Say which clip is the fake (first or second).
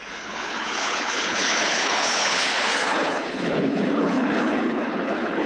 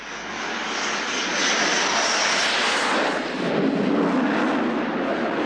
first